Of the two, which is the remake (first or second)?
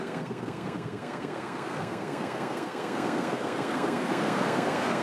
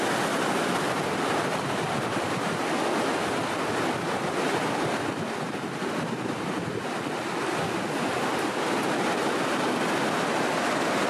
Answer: first